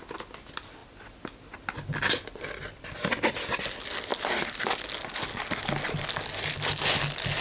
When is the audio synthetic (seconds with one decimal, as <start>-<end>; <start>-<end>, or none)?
none